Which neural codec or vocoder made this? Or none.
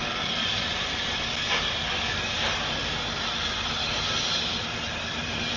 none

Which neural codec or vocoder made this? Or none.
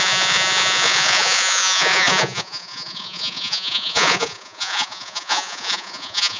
vocoder, Vocos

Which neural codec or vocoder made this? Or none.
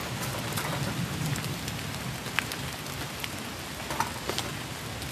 none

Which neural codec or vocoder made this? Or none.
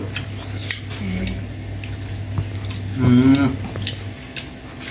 none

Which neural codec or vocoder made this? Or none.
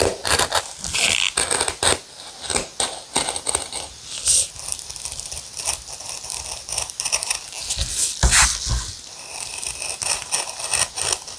none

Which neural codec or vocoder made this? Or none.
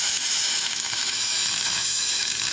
autoencoder, DAC-VAE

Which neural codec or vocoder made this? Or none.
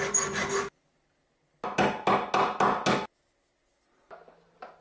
none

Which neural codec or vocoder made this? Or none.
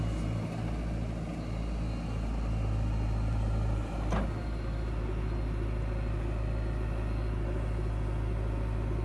none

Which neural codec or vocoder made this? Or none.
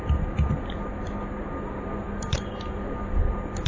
none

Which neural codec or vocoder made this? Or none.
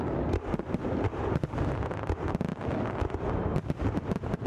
none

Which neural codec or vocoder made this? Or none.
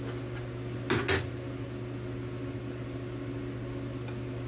none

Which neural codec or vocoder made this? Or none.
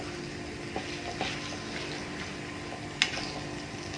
none